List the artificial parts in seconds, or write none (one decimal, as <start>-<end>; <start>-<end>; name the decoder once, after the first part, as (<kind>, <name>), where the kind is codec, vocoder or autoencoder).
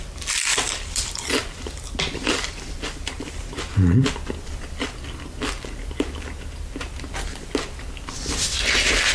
none